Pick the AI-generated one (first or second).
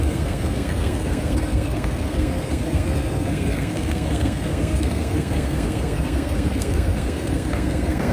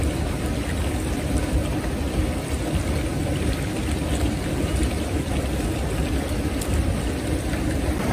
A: first